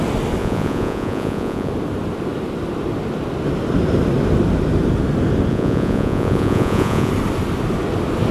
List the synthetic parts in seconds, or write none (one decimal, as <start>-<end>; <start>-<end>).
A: 0.4-1.7; 5.5-7.1